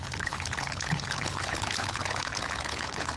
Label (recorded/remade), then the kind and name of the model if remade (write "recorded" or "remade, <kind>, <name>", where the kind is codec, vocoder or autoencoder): remade, codec, HILCodec